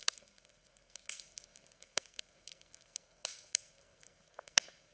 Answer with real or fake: fake